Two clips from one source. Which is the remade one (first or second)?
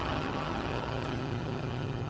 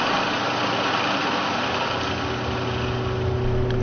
first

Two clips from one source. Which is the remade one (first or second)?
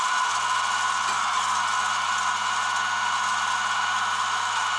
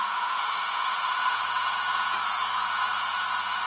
second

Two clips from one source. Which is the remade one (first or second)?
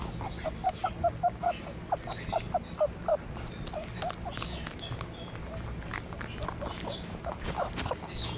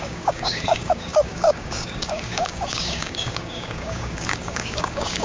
second